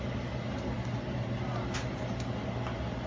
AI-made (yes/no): no